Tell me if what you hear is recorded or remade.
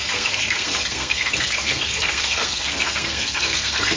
remade